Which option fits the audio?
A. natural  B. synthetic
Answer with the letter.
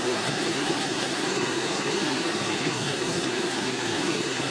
B